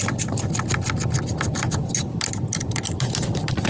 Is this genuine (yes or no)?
yes